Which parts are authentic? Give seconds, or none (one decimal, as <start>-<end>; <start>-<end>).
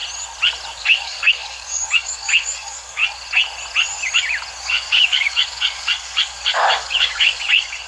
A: 0.0-0.8; 3.0-4.6